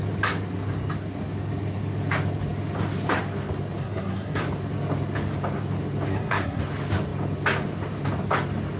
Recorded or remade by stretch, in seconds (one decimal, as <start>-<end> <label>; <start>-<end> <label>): 0.0-3.8 recorded; 3.8-4.4 remade; 4.4-6.1 recorded; 6.1-6.6 remade; 6.6-8.8 recorded

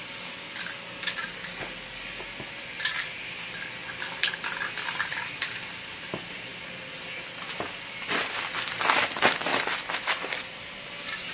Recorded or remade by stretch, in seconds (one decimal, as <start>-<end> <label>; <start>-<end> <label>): 0.0-5.1 recorded; 5.1-6.1 remade; 6.1-11.3 recorded

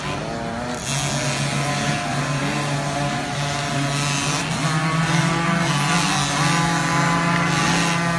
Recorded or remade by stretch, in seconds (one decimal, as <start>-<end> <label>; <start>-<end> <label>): 0.0-8.2 recorded

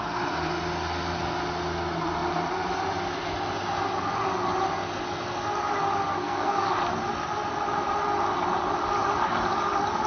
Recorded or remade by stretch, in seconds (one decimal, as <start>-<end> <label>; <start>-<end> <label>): 0.0-6.1 recorded; 6.1-6.7 remade; 6.7-10.1 recorded

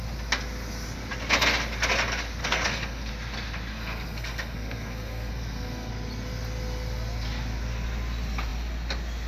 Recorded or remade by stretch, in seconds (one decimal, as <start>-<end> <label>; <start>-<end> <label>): 0.0-2.4 recorded; 2.4-3.1 remade; 3.1-3.7 recorded; 3.7-5.9 remade; 5.9-9.3 recorded

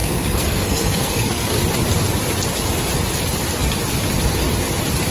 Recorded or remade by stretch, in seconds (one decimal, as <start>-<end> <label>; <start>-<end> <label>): 0.0-1.6 remade; 1.6-5.1 recorded